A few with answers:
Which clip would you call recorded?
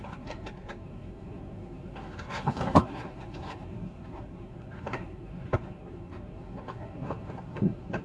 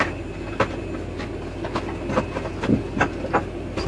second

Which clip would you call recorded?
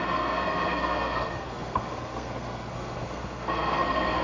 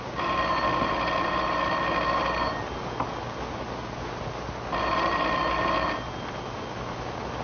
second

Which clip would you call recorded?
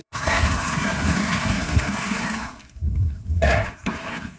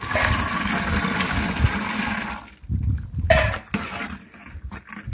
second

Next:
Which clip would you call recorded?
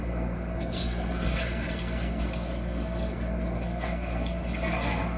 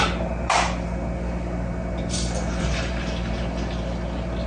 second